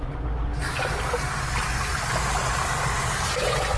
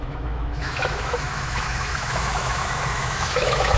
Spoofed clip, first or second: second